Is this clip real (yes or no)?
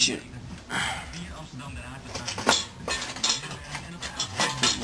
yes